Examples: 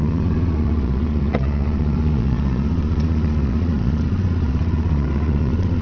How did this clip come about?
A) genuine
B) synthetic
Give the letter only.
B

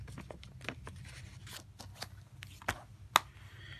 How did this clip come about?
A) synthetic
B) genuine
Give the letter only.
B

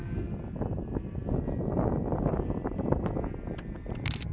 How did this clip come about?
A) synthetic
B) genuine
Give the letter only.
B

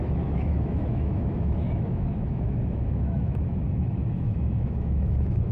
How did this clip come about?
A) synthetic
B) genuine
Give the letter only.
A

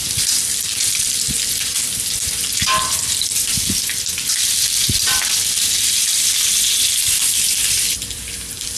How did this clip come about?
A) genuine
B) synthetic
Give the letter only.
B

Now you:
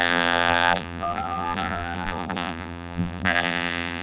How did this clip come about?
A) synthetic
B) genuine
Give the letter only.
A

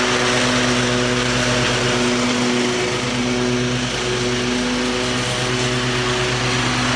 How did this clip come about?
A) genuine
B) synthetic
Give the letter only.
A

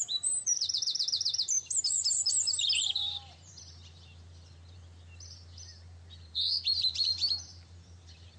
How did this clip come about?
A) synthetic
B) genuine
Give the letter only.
A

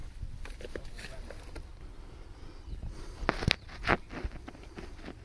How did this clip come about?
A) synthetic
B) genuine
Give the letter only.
B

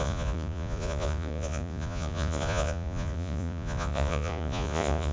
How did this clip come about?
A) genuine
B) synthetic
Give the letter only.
B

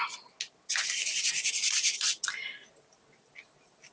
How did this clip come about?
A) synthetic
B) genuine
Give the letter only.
B